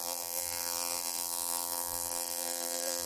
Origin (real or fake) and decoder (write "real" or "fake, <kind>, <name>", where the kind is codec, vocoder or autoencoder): fake, vocoder, BigVGAN v2